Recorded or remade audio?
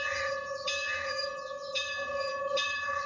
remade